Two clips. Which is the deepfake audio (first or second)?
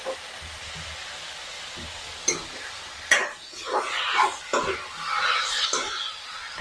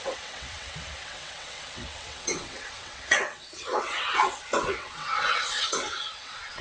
second